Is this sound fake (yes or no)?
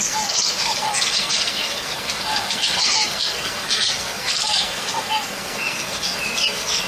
yes